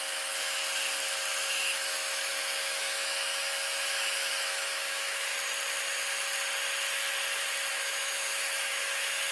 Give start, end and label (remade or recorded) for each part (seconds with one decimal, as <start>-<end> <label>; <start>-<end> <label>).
0.0-0.6 remade; 0.6-1.5 recorded; 1.5-5.3 remade; 5.3-7.7 recorded; 7.7-9.3 remade